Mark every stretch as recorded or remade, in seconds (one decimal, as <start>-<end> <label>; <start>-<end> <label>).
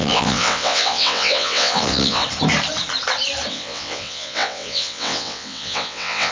0.0-2.2 remade; 2.2-3.5 recorded; 3.5-6.3 remade